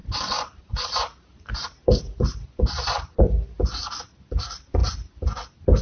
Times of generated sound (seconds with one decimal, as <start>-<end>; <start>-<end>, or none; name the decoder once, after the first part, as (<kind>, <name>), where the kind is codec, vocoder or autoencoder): 0.0-3.2 (vocoder, BigVGAN v2)